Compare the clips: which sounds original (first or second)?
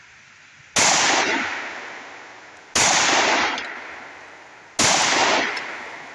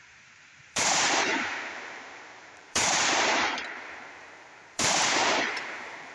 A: first